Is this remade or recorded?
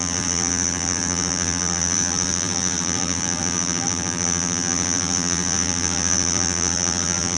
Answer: remade